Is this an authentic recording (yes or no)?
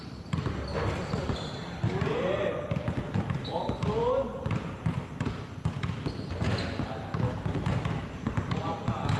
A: yes